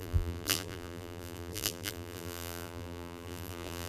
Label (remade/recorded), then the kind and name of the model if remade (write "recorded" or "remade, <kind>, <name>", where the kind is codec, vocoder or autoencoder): remade, vocoder, BigVGAN v2